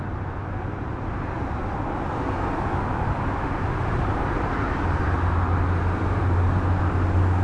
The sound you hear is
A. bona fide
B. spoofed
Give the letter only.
A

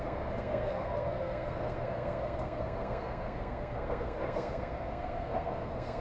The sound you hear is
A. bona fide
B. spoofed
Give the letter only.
B